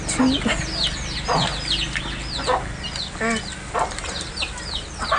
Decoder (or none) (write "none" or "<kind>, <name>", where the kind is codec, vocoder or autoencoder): none